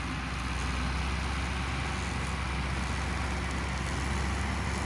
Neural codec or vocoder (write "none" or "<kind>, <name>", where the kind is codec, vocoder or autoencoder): none